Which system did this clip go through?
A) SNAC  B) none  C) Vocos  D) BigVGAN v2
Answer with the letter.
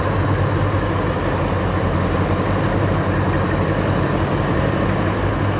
B